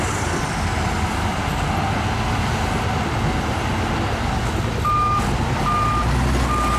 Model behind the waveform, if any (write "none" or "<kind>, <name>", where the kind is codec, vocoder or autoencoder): none